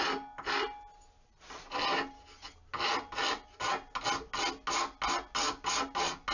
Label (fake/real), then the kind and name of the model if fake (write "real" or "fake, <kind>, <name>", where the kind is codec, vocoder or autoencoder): real